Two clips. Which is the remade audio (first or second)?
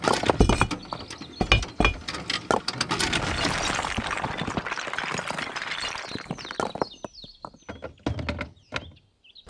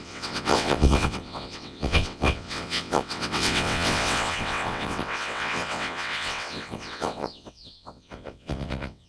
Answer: second